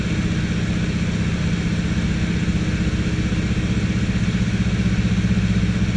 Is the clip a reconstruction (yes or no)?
no